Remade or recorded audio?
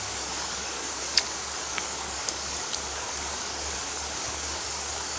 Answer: remade